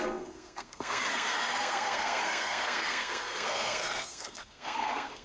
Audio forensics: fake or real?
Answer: fake